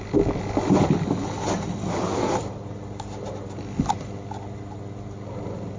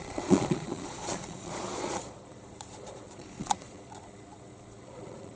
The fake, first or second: second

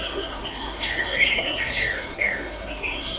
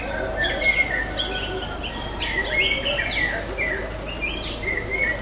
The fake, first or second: first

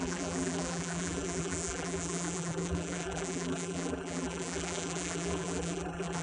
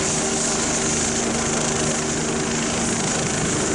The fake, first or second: first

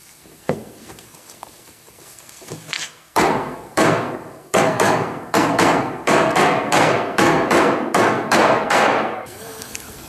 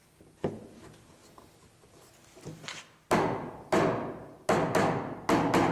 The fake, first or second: first